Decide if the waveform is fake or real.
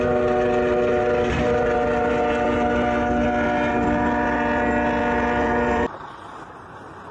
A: real